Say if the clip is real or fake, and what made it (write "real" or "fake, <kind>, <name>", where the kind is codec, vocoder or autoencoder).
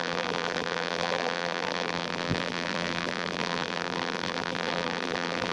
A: fake, vocoder, BigVGAN v2